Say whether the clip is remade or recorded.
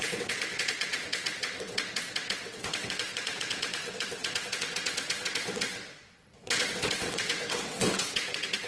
remade